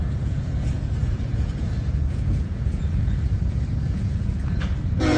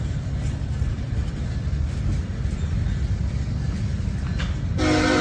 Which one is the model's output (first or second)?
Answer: first